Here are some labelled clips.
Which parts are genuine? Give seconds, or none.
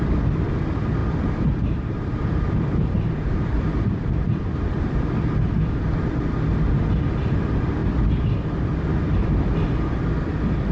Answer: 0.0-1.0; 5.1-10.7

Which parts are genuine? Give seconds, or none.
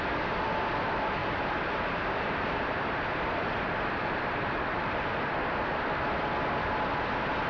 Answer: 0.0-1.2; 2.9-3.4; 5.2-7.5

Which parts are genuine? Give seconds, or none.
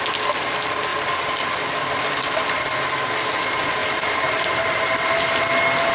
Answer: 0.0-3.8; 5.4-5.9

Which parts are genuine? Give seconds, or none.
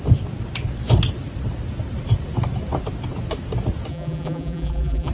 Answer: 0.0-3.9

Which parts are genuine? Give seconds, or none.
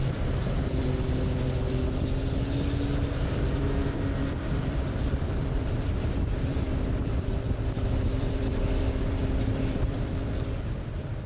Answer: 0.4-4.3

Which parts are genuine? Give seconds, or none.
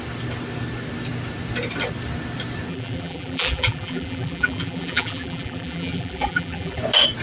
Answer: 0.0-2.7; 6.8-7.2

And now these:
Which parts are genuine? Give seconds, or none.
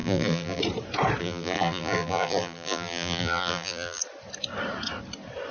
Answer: 0.6-1.2; 4.0-5.5